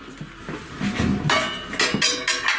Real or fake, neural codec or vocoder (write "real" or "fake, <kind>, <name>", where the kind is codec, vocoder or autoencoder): real